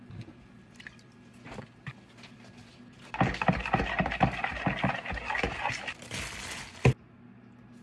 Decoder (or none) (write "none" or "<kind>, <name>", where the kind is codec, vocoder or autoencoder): none